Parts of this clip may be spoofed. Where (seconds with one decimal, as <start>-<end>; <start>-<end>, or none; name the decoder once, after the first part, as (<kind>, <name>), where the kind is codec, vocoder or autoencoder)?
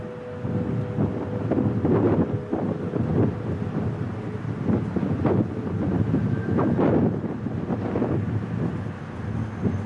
none